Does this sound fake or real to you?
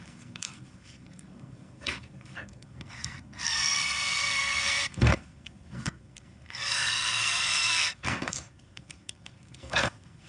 fake